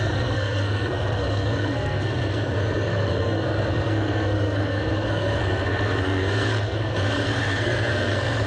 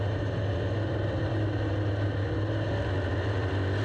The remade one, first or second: first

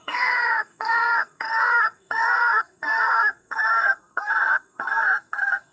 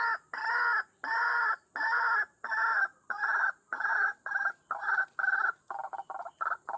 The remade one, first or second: first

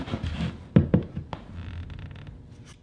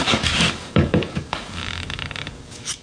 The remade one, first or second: second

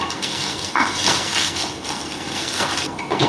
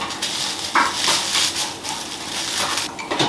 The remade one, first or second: first